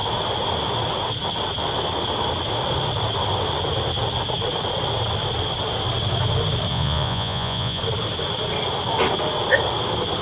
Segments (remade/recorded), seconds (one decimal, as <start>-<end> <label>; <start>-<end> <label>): 0.0-6.7 recorded; 6.7-7.8 remade; 7.8-10.2 recorded